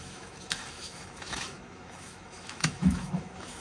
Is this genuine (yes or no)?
no